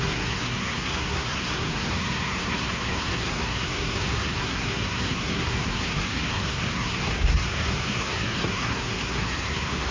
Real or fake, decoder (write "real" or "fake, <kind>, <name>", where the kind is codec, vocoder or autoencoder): fake, codec, SNAC